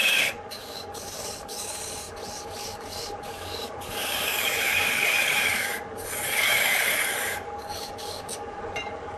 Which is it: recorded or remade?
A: remade